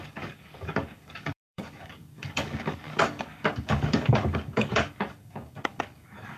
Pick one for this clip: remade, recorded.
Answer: remade